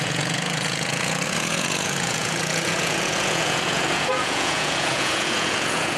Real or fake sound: fake